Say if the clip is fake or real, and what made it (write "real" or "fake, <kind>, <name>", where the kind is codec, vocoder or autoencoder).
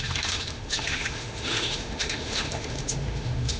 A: fake, autoencoder, DAC-VAE